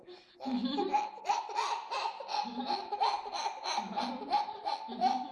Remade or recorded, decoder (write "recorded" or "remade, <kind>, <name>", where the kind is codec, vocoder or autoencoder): recorded